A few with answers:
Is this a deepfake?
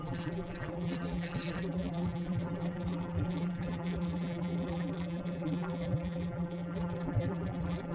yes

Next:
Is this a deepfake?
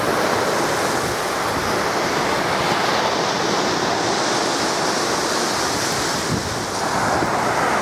no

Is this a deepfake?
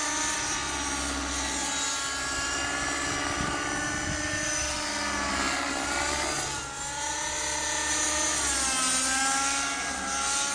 no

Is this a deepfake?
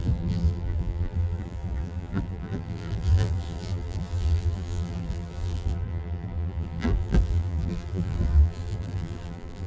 yes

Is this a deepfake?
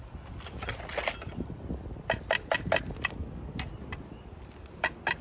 no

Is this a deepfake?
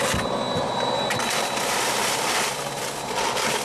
yes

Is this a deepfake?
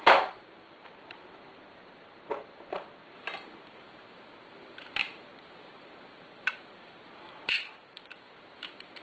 yes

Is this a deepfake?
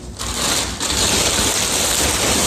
no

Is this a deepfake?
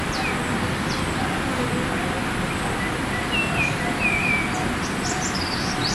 no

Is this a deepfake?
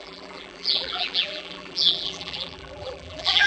yes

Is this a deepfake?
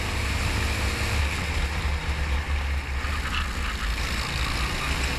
no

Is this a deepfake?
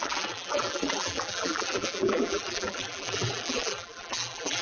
yes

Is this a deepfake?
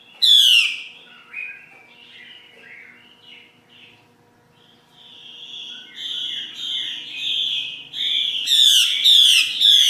no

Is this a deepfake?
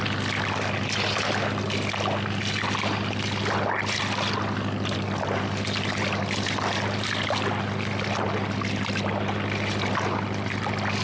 no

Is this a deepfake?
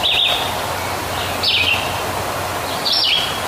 no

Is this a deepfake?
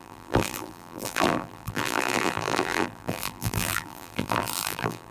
yes